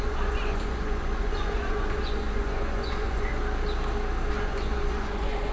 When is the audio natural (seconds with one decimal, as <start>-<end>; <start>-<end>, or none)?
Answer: 3.3-4.3